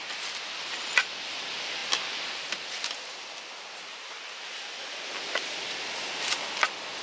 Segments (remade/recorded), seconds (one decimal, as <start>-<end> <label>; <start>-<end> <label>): 0.0-7.0 recorded